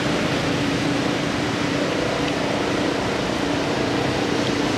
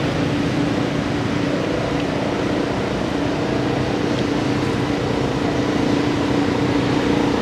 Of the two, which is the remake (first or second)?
first